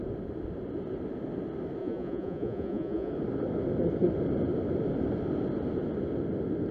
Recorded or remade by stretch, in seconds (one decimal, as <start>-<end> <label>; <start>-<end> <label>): 0.0-1.8 recorded; 1.8-3.1 remade; 3.1-6.7 recorded